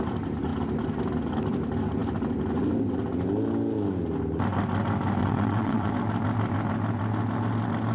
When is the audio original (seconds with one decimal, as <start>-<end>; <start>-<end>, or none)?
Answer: 0.0-5.2; 5.9-7.9